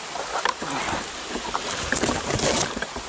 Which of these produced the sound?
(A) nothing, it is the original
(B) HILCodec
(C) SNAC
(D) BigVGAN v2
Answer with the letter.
A